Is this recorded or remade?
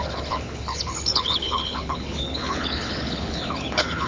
remade